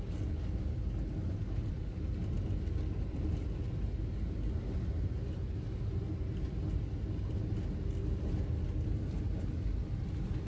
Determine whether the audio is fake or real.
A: real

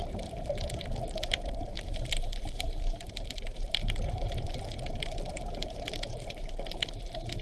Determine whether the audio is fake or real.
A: fake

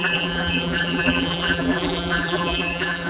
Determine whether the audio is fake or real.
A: fake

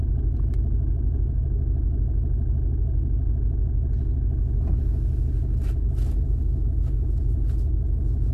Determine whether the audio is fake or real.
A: real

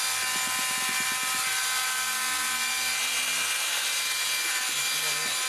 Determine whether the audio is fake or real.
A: real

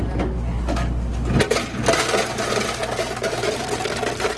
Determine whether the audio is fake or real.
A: real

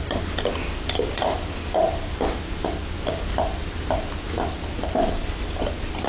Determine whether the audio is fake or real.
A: real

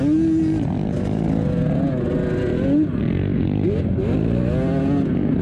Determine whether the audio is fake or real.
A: real